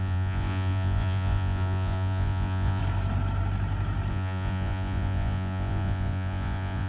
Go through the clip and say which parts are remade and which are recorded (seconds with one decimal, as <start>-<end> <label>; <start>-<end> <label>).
0.0-2.8 remade; 2.8-4.1 recorded; 4.1-6.9 remade